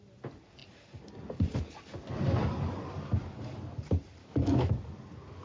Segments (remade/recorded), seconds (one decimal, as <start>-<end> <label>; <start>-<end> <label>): 0.0-4.2 recorded; 4.2-4.7 remade; 4.7-5.4 recorded

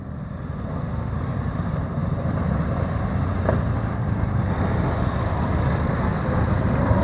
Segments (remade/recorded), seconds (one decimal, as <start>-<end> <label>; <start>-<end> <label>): 0.0-6.1 recorded; 6.1-7.0 remade

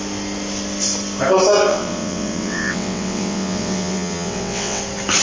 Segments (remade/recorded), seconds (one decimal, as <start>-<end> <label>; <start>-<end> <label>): 0.0-1.7 recorded; 1.7-4.8 remade; 4.8-5.2 recorded

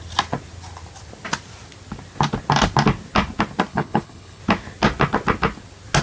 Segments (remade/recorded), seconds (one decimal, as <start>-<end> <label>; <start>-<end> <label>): 0.0-3.7 recorded; 3.7-4.4 remade; 4.4-6.0 recorded

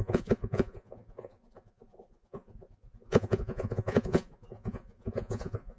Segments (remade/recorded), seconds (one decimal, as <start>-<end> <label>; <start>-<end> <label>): 0.0-5.8 remade

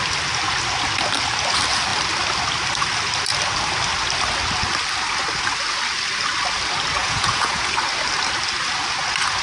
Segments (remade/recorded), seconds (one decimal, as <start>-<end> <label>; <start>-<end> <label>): 0.0-7.0 recorded; 7.0-7.7 remade; 7.7-9.4 recorded

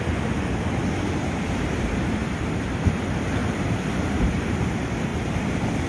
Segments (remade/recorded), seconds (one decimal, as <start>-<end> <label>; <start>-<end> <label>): 0.0-5.1 remade; 5.1-5.9 recorded

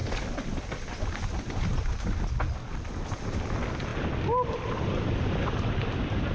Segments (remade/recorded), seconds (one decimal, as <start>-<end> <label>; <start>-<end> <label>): 0.0-0.9 remade; 0.9-6.3 recorded